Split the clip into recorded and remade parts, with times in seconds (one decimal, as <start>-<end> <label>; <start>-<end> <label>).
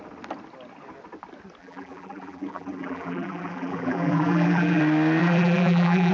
0.0-1.6 recorded; 1.6-4.8 remade; 4.8-5.2 recorded; 5.2-6.1 remade